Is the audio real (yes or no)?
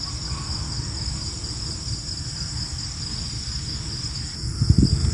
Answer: yes